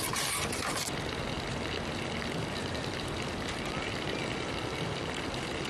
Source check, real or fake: real